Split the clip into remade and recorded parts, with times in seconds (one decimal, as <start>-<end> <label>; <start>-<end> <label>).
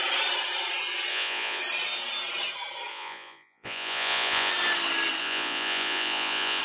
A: 0.0-1.1 recorded; 1.1-1.6 remade; 1.6-2.9 recorded; 2.9-4.5 remade; 4.5-5.2 recorded; 5.2-6.6 remade